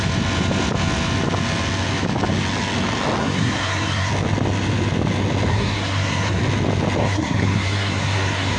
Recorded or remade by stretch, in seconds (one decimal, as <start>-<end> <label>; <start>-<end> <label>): 0.0-3.2 recorded; 3.2-4.1 remade; 4.1-5.5 recorded; 5.5-6.4 remade; 6.4-7.0 recorded; 7.0-8.6 remade